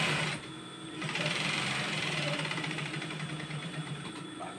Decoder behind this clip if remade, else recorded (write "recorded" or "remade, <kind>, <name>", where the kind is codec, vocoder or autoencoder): remade, vocoder, BigVGAN v2